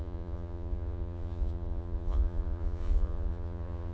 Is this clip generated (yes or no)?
yes